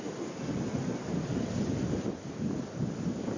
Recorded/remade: recorded